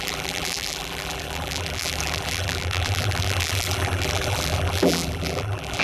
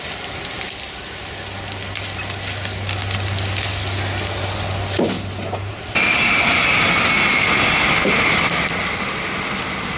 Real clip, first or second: second